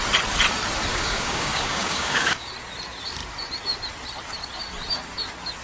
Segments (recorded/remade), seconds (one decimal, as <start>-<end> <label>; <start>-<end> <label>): 0.0-0.9 recorded; 0.9-2.5 remade; 2.5-5.6 recorded